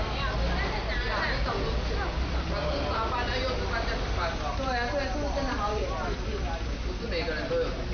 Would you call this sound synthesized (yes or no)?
no